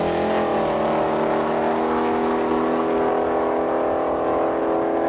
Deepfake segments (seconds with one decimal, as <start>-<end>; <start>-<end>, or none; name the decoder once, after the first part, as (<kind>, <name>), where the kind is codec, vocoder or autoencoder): none